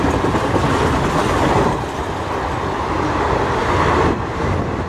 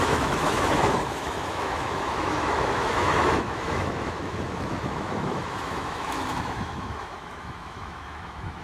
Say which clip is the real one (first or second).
first